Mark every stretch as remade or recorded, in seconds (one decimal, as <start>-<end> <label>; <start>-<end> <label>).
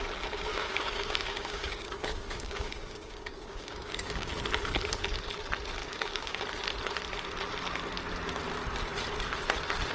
0.0-0.5 recorded; 0.5-4.3 remade; 4.3-5.8 recorded; 5.8-6.4 remade; 6.4-9.9 recorded